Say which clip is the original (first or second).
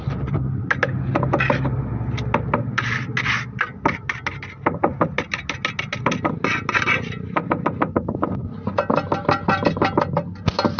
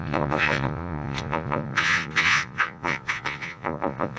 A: first